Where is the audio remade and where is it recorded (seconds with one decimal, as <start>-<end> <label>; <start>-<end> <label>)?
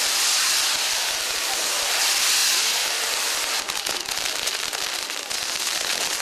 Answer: 0.0-6.2 recorded